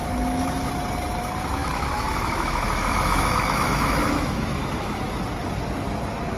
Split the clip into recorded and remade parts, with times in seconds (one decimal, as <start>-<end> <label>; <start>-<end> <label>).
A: 0.0-0.7 remade; 0.7-1.6 recorded; 1.6-5.0 remade; 5.0-6.4 recorded